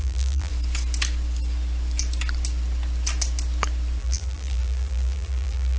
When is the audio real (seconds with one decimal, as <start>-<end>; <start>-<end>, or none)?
0.5-4.0